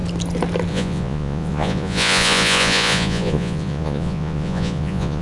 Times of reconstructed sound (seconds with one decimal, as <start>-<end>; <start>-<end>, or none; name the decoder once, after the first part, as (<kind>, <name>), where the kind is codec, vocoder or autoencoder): 0.7-5.2 (vocoder, Vocos)